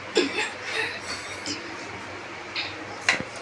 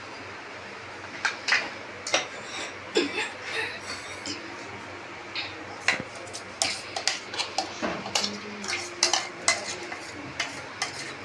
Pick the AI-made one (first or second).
first